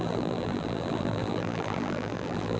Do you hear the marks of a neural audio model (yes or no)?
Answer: yes